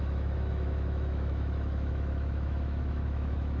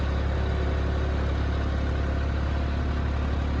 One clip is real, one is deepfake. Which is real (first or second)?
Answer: second